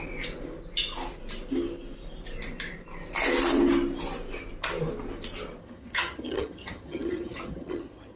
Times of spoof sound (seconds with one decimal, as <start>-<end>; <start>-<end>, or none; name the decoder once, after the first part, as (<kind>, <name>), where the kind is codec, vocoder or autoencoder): 5.6-8.2 (vocoder, HiFi-GAN)